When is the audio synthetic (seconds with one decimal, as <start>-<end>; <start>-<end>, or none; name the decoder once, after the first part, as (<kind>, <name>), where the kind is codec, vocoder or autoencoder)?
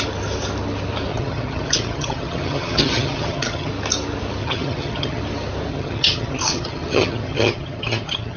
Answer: 1.1-3.7 (vocoder, HiFi-GAN); 4.4-5.2; 5.7-8.4